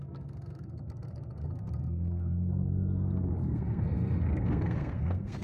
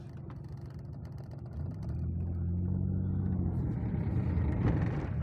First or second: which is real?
second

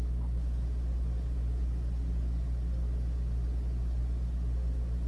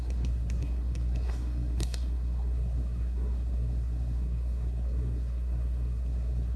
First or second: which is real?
first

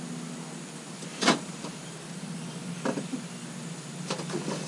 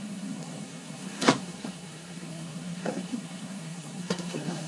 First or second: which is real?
first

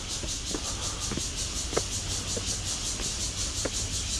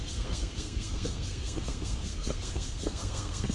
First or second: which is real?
first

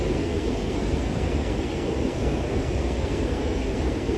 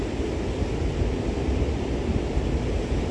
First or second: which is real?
second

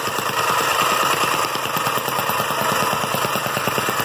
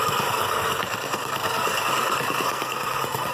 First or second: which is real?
first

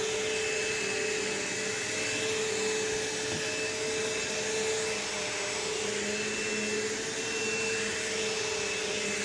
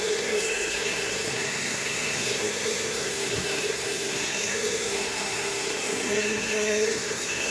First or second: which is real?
first